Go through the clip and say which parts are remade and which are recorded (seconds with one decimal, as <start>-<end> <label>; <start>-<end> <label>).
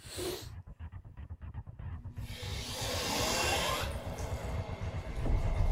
0.0-0.7 recorded; 0.7-1.3 remade; 1.3-5.7 recorded